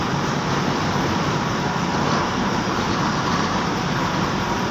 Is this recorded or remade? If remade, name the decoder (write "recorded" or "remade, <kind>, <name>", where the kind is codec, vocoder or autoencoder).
remade, vocoder, BigVGAN v2